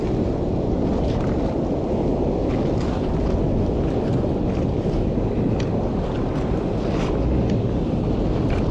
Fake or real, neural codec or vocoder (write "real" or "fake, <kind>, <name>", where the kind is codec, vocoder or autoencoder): real